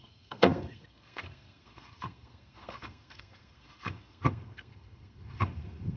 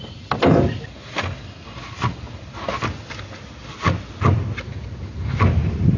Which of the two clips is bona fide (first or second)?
second